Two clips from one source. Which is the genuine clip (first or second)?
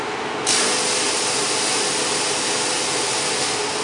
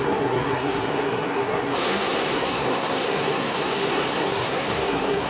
first